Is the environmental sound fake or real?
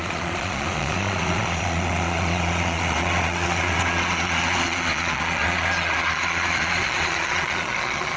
fake